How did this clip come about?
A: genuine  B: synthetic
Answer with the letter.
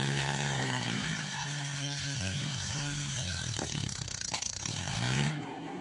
B